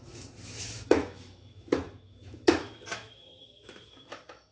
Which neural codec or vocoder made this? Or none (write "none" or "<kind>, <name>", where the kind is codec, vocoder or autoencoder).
autoencoder, DAC-VAE